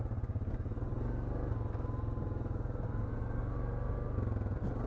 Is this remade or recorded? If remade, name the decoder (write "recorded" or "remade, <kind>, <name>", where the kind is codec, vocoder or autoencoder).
recorded